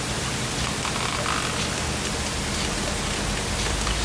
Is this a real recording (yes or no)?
yes